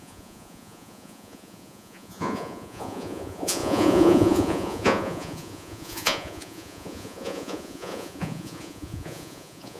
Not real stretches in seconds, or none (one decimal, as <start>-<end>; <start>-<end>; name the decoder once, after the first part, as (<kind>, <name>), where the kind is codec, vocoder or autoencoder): 0.0-9.8 (vocoder, Vocos)